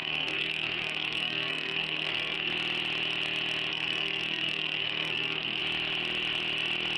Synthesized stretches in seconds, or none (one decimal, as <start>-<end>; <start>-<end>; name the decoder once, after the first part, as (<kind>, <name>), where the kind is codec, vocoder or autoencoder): 0.0-2.5 (codec, SNAC); 3.7-5.6

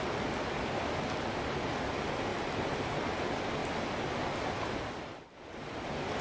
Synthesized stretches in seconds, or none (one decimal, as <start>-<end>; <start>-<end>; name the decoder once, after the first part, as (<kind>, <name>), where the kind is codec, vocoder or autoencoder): none

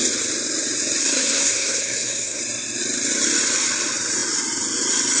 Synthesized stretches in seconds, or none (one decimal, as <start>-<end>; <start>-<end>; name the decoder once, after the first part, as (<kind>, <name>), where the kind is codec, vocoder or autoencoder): 1.0-2.4 (codec, SNAC)

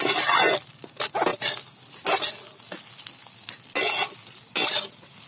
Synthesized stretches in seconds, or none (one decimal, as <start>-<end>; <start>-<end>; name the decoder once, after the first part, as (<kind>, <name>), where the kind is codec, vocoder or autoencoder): none

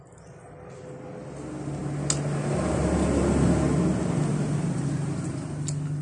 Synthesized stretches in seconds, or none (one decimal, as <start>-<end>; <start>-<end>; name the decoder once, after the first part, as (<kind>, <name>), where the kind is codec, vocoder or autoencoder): none

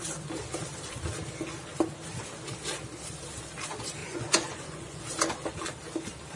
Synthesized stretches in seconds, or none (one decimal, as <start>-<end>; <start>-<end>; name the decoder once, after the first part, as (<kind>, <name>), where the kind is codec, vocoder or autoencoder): 4.0-5.0 (vocoder, Vocos)